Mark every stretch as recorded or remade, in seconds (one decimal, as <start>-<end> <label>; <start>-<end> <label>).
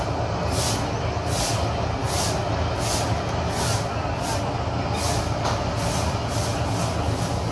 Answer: 0.0-7.5 recorded